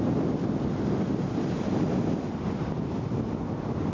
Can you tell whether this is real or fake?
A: real